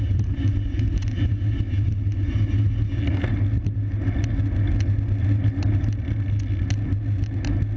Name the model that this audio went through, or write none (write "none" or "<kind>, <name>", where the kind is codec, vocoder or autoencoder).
none